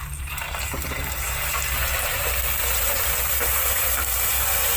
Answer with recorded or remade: remade